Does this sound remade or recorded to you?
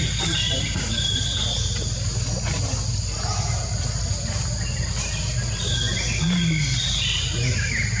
recorded